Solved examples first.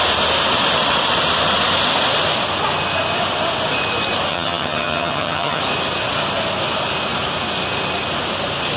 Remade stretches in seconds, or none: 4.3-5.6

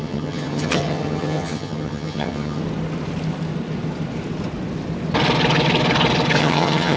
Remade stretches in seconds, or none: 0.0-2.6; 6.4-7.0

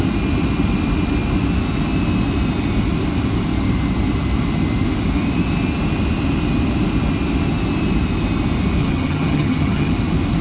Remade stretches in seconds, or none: 8.8-9.9